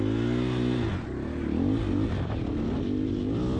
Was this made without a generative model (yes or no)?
yes